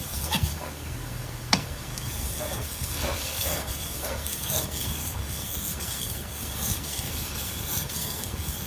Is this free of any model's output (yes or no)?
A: no